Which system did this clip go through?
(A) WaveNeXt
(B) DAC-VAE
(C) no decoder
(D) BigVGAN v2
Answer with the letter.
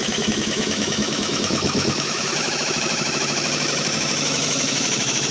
B